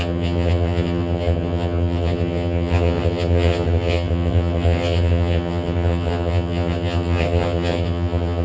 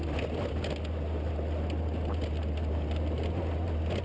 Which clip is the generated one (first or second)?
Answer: first